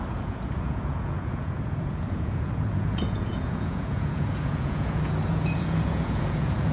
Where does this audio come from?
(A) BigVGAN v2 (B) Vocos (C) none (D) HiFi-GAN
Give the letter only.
B